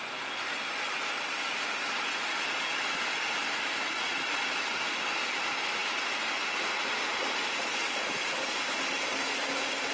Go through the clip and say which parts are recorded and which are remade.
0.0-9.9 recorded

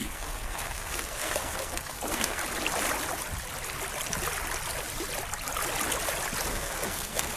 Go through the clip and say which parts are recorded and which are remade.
0.0-2.4 remade; 2.4-6.5 recorded; 6.5-7.4 remade

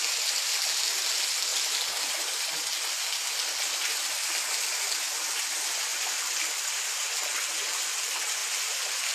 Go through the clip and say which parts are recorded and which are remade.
0.0-5.9 recorded; 5.9-7.0 remade; 7.0-8.4 recorded; 8.4-9.1 remade

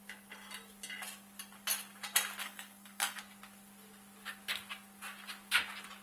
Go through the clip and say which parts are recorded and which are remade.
0.0-2.4 recorded; 2.4-3.2 remade; 3.2-6.0 recorded